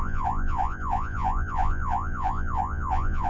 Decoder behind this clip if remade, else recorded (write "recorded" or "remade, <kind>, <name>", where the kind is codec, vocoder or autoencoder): remade, vocoder, Vocos